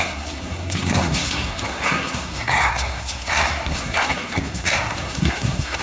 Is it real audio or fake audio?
fake